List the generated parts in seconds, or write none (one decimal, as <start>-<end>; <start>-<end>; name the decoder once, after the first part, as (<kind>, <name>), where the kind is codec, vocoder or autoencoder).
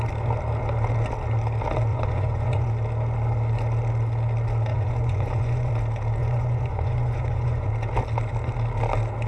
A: 1.9-2.7 (vocoder, Vocos); 4.7-5.7; 6.2-7.7